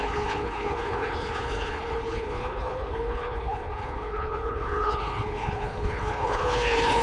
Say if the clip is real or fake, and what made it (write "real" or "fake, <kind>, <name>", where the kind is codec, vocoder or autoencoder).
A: fake, codec, HILCodec